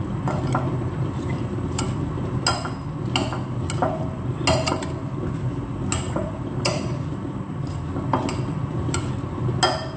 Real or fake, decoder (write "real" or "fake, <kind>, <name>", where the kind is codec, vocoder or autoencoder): real